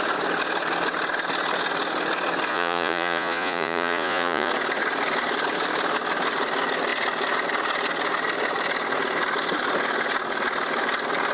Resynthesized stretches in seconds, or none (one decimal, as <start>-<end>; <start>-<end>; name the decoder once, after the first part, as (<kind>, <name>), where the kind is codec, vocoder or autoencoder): 2.5-4.5 (vocoder, Vocos)